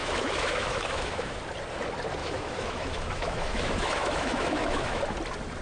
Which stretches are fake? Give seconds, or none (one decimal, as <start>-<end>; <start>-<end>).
0.0-1.4; 2.2-5.0